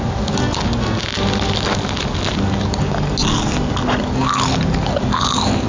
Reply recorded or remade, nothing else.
recorded